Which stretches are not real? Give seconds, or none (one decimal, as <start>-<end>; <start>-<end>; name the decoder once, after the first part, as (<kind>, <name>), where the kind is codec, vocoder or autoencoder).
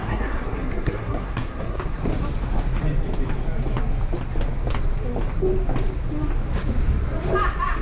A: 0.0-2.0 (codec, SNAC)